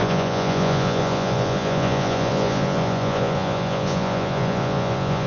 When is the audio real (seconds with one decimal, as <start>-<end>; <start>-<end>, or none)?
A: none